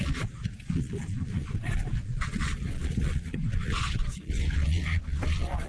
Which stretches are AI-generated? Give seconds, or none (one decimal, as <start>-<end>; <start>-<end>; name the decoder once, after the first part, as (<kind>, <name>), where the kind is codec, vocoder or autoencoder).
0.0-5.7 (vocoder, Vocos)